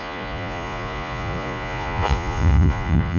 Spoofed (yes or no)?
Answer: yes